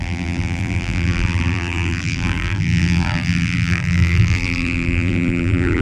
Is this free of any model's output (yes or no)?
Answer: no